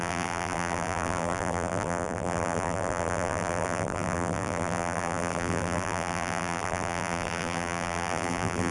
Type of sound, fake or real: fake